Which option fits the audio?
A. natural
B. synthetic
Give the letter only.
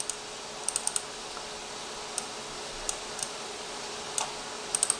A